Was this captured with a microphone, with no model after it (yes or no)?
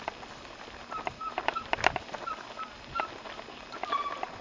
yes